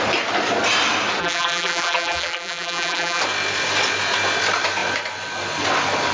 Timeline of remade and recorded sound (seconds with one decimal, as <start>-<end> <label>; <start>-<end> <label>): 0.0-1.2 recorded; 1.2-3.2 remade; 3.2-6.1 recorded